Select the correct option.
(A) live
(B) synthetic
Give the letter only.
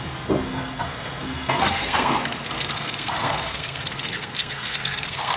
B